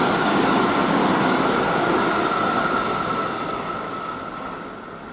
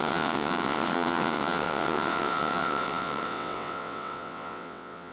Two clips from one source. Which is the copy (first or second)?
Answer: second